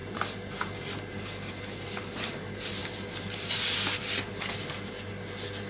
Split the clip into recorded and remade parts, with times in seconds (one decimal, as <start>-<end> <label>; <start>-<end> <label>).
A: 0.0-5.7 recorded